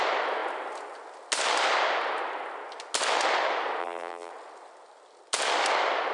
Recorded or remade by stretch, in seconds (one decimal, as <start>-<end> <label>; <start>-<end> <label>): 0.0-3.8 recorded; 3.8-4.3 remade; 4.3-6.1 recorded